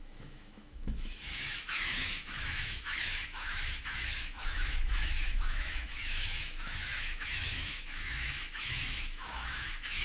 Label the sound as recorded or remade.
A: remade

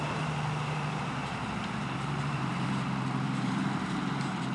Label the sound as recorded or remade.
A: remade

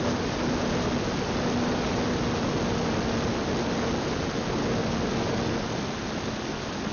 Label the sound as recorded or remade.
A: recorded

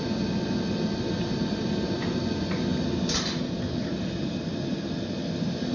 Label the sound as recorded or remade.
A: recorded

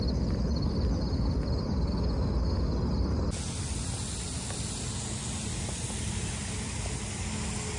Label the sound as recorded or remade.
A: recorded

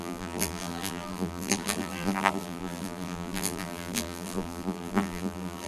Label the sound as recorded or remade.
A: remade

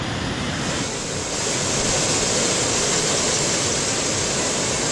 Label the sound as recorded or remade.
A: recorded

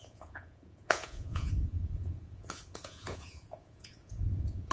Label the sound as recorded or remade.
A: remade